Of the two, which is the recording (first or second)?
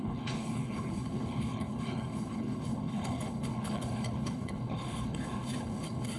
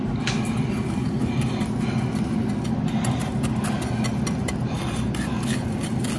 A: second